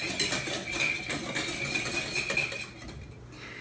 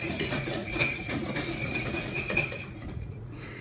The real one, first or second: first